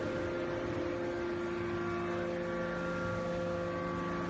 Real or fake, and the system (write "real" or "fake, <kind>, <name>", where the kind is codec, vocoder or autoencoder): real